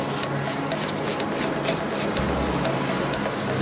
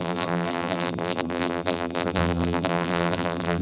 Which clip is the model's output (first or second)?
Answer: second